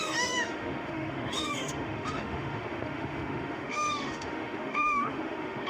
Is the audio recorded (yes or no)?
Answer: no